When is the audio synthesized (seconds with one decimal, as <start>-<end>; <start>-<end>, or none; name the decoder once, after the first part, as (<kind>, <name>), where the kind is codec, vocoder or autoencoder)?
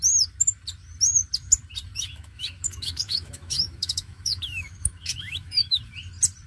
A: 1.9-5.8 (autoencoder, DAC-VAE)